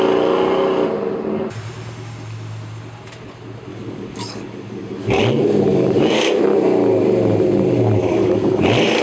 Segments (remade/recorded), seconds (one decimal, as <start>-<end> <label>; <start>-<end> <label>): 0.0-3.7 recorded; 3.7-5.2 remade; 5.2-5.7 recorded; 5.7-6.4 remade; 6.4-8.0 recorded; 8.0-8.6 remade; 8.6-9.0 recorded